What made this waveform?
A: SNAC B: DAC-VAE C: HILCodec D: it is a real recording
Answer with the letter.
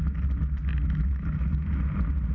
D